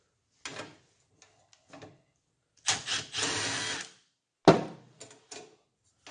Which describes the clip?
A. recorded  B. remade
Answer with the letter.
A